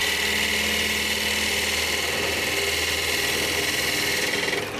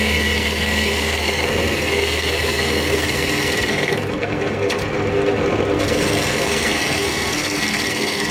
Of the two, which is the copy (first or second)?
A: second